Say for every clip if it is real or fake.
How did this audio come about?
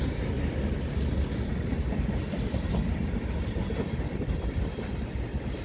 real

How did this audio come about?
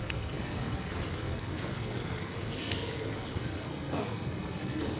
fake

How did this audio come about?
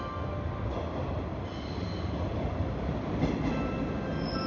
real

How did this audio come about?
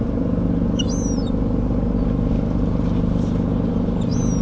real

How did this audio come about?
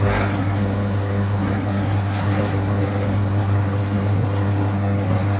fake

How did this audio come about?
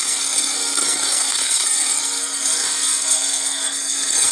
fake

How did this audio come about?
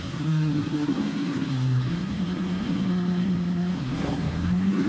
fake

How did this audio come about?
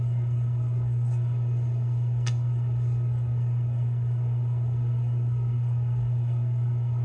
fake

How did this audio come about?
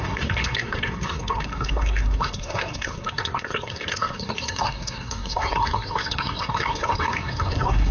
fake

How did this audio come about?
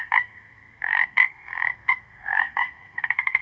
fake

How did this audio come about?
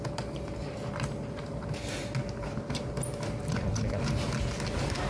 real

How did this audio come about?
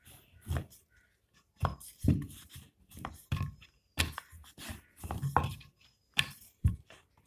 real